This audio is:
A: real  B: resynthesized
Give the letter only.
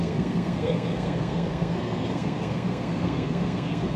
B